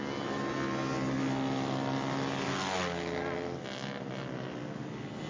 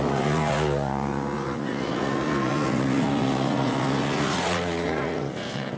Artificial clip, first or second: second